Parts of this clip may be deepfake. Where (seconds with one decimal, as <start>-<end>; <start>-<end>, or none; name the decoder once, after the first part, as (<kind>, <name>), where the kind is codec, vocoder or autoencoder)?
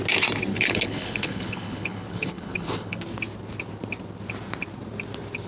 0.5-3.0 (codec, HILCodec)